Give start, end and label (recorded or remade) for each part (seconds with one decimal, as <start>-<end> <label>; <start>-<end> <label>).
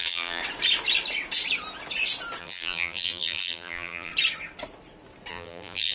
0.0-0.4 remade; 0.4-2.4 recorded; 2.4-4.1 remade; 4.1-5.3 recorded; 5.3-5.9 remade